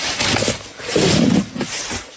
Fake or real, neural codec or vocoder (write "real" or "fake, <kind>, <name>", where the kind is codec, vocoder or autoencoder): real